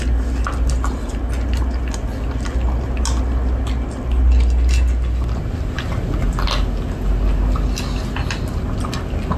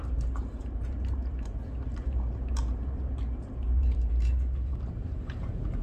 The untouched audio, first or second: first